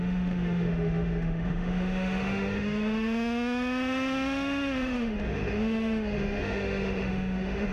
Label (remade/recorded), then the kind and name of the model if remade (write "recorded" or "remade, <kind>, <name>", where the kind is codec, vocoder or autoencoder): remade, autoencoder, DAC-VAE